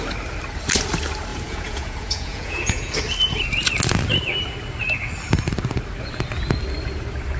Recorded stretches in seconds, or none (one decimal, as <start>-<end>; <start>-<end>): 0.0-1.3; 2.9-7.4